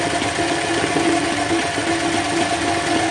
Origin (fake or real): real